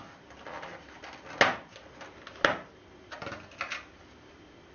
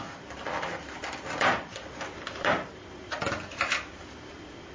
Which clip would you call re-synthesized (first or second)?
second